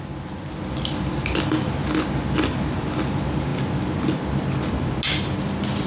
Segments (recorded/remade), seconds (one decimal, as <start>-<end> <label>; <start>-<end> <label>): 0.0-5.9 recorded